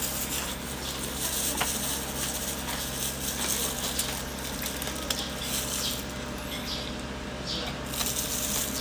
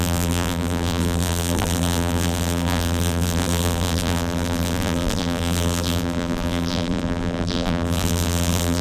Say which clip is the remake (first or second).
second